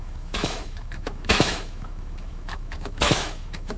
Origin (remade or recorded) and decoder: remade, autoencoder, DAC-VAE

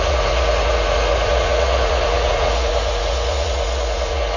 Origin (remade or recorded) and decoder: remade, vocoder, Vocos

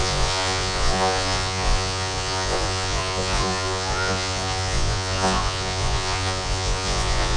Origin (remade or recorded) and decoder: remade, vocoder, Vocos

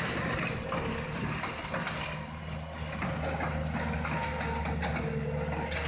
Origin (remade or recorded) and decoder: recorded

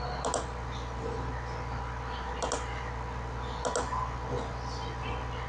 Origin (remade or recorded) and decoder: recorded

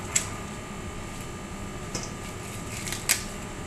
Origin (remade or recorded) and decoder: recorded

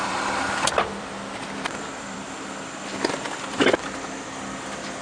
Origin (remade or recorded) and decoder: remade, vocoder, BigVGAN v2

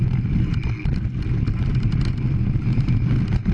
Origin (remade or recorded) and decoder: recorded